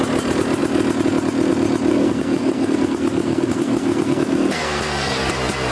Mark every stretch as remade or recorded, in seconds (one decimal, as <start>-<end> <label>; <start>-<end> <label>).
0.0-1.9 recorded; 1.9-5.3 remade; 5.3-5.7 recorded